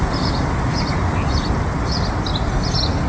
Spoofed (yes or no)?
no